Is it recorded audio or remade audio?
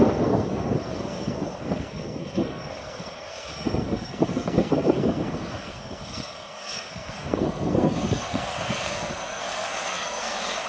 remade